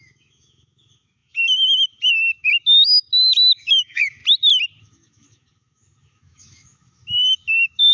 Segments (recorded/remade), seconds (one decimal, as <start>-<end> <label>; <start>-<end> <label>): 0.0-4.2 remade; 4.2-4.8 recorded; 4.8-7.9 remade